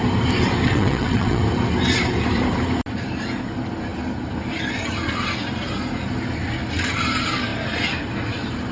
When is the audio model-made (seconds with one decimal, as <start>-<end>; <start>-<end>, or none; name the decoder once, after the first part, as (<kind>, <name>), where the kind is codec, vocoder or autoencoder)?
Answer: 0.7-1.4 (vocoder, WaveNeXt)